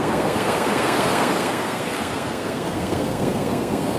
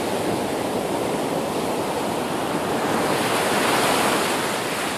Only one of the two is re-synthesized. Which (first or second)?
first